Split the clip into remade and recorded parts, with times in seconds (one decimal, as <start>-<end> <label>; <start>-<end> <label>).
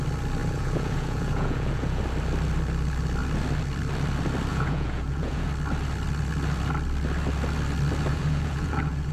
0.0-0.4 recorded; 0.4-2.0 remade; 2.0-4.5 recorded; 4.5-5.5 remade; 5.5-8.1 recorded; 8.1-9.1 remade